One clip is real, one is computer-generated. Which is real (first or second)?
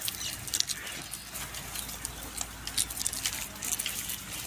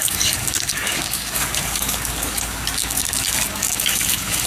first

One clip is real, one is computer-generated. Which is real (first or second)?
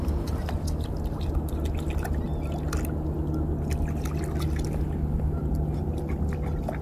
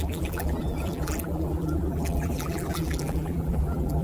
first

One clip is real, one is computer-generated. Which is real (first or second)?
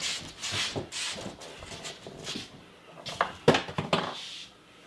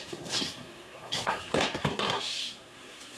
first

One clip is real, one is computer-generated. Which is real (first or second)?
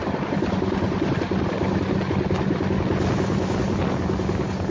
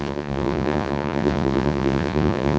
first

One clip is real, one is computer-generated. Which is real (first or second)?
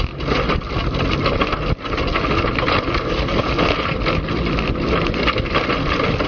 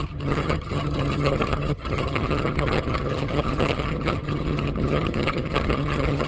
first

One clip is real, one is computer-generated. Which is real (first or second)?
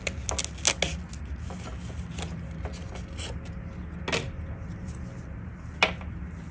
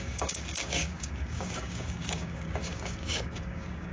first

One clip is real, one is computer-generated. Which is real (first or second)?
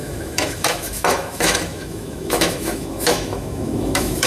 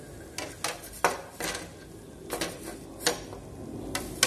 second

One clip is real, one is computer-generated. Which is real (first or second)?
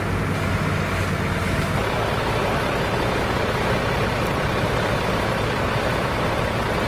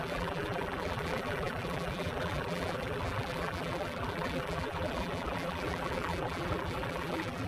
first